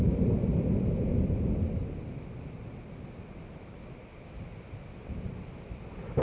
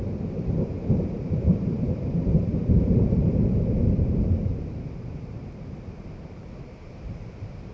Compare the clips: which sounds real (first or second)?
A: first